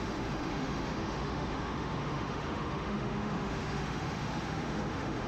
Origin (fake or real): fake